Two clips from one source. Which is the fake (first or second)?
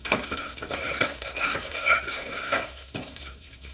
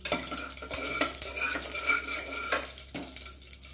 first